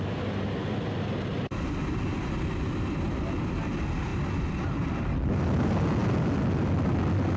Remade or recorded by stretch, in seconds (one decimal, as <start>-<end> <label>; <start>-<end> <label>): 0.0-4.1 recorded; 4.1-5.0 remade; 5.0-7.4 recorded